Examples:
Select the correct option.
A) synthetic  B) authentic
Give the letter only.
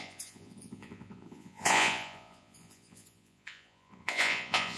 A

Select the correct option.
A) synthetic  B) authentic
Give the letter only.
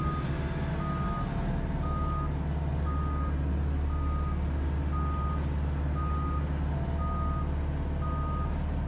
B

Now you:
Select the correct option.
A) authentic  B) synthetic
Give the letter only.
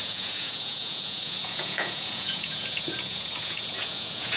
B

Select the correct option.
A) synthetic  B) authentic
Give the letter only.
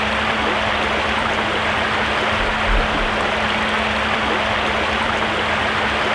B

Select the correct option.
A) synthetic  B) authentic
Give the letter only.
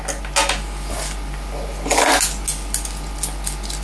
B